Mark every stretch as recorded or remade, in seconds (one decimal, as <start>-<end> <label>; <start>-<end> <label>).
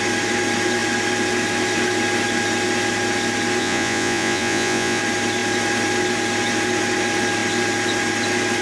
0.0-3.6 recorded; 3.6-5.0 remade; 5.0-8.6 recorded